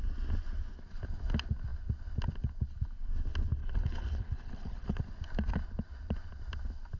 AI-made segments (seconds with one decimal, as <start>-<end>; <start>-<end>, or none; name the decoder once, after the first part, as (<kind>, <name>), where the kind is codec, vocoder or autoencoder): 3.6-5.0 (codec, HILCodec)